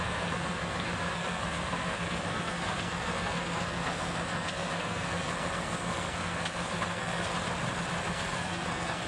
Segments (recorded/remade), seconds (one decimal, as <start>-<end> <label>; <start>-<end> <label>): 0.0-7.3 remade; 7.3-8.1 recorded; 8.1-9.1 remade

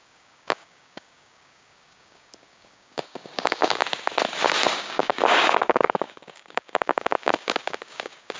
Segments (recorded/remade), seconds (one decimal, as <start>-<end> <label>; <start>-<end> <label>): 0.0-3.8 remade; 3.8-4.7 recorded; 4.7-8.4 remade

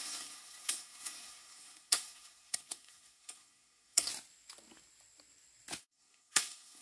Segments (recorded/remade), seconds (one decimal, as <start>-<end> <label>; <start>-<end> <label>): 0.0-4.1 remade; 4.1-5.8 recorded; 5.8-6.8 remade

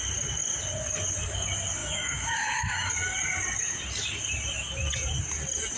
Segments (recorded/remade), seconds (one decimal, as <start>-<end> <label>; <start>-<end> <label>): 0.0-1.8 recorded; 1.8-2.9 remade; 2.9-5.8 recorded

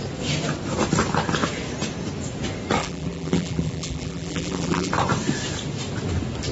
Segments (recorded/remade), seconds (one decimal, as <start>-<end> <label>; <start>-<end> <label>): 0.0-2.8 recorded; 2.8-4.9 remade; 4.9-6.5 recorded

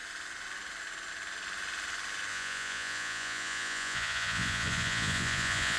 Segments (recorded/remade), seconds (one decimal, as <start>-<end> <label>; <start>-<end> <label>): 0.0-2.3 recorded; 2.3-5.8 remade

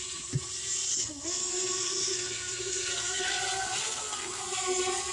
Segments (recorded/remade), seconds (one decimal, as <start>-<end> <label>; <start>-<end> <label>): 0.0-0.9 recorded; 0.9-3.4 remade; 3.4-3.8 recorded; 3.8-4.4 remade; 4.4-5.1 recorded